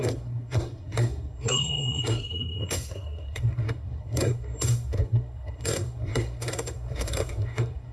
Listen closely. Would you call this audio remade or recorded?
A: remade